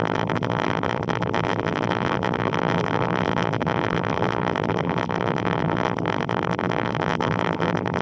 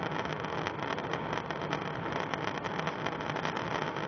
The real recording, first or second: second